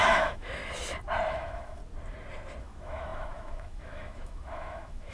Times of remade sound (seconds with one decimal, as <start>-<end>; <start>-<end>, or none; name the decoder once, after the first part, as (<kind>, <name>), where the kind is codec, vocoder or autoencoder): 0.0-0.6 (autoencoder, DAC-VAE); 1.3-1.8; 2.6-5.1